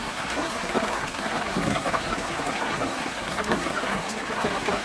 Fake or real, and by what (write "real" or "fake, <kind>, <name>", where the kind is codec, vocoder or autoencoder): fake, codec, SNAC